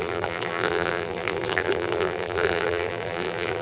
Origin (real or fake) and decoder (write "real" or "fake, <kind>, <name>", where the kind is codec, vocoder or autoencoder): fake, vocoder, BigVGAN v2